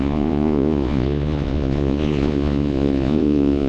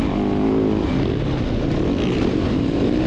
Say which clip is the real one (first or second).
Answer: second